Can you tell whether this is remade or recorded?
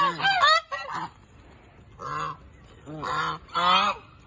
recorded